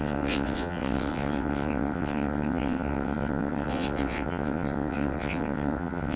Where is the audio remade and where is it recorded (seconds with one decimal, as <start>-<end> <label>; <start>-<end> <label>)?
0.0-6.2 remade